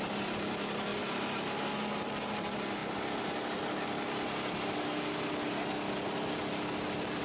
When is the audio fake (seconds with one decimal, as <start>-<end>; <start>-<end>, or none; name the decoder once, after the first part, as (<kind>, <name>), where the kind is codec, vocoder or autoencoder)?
none